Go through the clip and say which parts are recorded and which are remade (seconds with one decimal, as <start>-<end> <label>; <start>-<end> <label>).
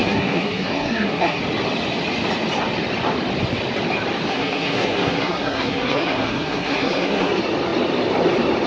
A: 0.0-1.4 remade; 1.4-4.3 recorded; 4.3-7.3 remade; 7.3-8.7 recorded